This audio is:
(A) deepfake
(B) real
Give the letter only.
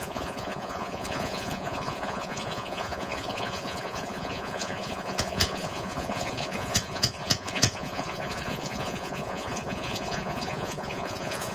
A